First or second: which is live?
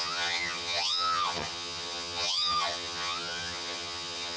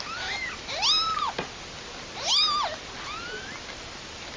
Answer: second